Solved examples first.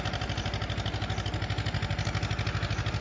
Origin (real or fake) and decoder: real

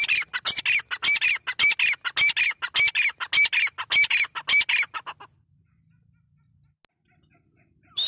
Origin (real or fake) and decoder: real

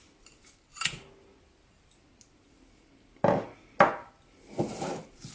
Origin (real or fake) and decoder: real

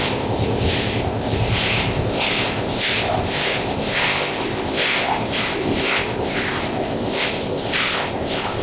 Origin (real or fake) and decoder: fake, codec, ZipCodec